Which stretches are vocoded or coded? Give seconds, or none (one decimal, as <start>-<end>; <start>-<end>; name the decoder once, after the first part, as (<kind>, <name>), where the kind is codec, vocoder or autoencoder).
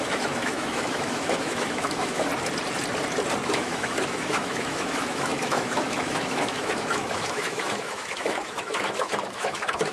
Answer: 0.0-2.3 (autoencoder, DAC-VAE); 3.5-9.9